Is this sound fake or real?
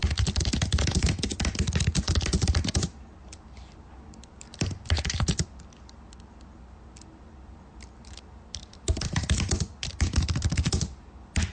real